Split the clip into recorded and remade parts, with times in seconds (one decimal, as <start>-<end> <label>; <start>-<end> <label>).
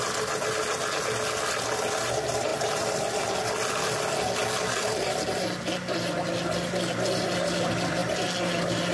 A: 0.0-8.9 recorded